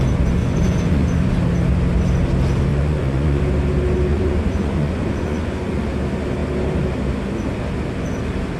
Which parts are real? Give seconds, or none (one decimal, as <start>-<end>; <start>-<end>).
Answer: 0.0-0.4; 1.4-2.7; 3.4-4.1; 5.9-8.6